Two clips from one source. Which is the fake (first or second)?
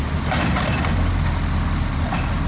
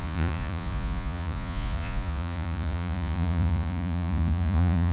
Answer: second